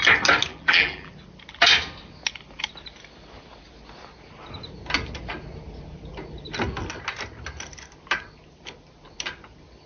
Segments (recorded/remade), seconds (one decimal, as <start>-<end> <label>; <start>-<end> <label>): 0.0-0.5 recorded; 0.5-1.1 remade; 1.1-9.9 recorded